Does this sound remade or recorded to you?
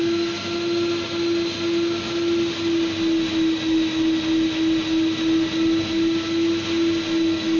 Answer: recorded